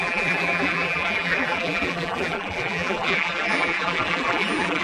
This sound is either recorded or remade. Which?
remade